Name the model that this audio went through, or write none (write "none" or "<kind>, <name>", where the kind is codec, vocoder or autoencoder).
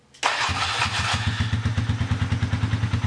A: none